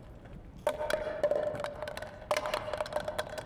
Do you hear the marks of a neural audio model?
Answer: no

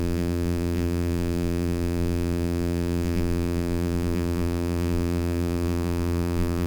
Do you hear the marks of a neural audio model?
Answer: yes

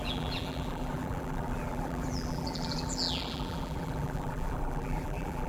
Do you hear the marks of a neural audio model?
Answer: yes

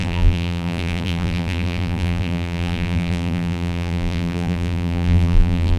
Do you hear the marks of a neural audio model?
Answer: yes